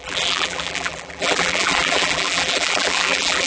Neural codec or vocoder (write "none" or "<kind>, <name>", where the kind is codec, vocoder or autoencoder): vocoder, BigVGAN v2